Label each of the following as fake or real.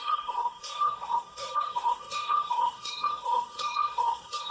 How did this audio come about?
fake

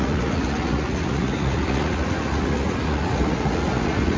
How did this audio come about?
fake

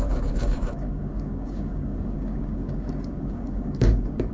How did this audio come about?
fake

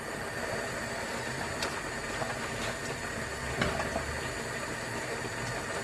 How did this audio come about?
real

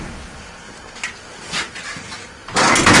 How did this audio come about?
real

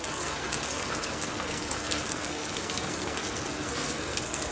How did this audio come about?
fake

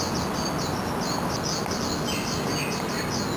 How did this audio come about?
real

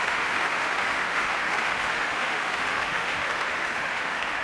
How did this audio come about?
fake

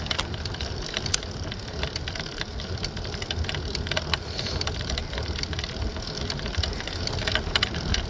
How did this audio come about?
real